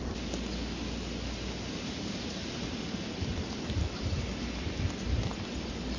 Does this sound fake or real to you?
real